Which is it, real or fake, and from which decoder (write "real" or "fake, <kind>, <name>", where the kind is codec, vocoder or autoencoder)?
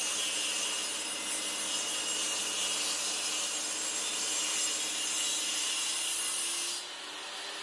real